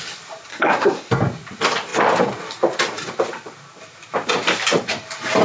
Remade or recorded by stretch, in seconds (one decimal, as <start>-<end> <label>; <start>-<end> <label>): 0.0-0.5 recorded; 0.5-1.1 remade; 1.1-5.4 recorded

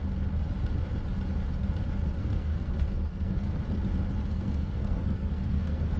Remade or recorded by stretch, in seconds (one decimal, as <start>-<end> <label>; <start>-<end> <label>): 0.0-2.2 recorded; 2.2-3.6 remade; 3.6-4.3 recorded; 4.3-6.0 remade

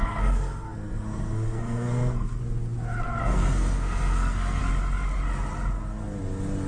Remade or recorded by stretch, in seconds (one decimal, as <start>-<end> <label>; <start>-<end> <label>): 0.0-2.4 remade; 2.4-3.2 recorded; 3.2-4.6 remade; 4.6-6.7 recorded

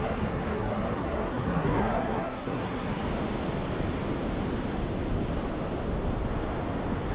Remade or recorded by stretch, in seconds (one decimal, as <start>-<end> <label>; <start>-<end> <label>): 0.0-3.0 remade; 3.0-7.1 recorded

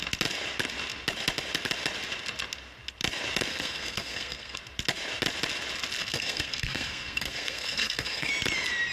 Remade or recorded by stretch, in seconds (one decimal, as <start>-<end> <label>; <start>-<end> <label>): 0.0-3.5 recorded; 3.5-4.6 remade; 4.6-6.0 recorded; 6.0-8.3 remade; 8.3-8.9 recorded